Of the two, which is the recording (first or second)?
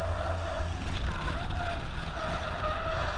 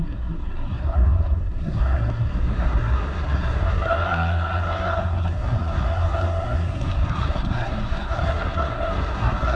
first